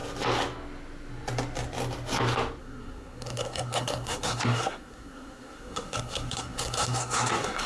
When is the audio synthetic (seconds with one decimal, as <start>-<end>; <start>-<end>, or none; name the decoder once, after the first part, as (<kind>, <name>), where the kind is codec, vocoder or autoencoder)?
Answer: 2.6-7.7 (codec, SNAC)